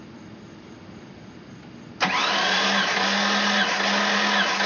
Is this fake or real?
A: real